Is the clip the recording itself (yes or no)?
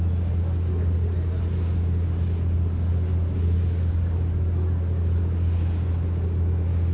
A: yes